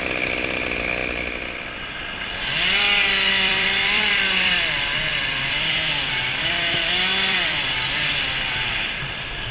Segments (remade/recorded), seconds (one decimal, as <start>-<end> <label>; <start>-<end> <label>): 0.0-1.0 remade; 1.0-3.3 recorded; 3.3-9.5 remade